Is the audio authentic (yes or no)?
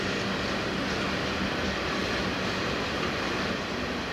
yes